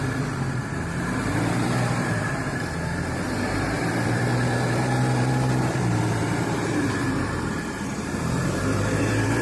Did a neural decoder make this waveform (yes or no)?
yes